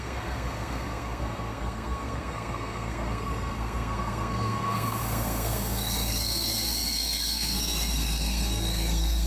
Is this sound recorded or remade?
remade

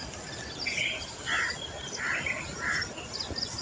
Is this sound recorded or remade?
recorded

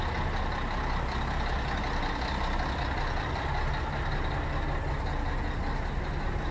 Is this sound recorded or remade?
recorded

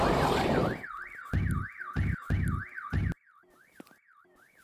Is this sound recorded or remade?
recorded